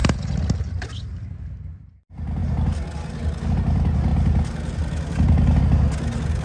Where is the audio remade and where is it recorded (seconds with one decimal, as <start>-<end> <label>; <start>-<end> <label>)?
0.0-0.8 remade; 0.8-6.4 recorded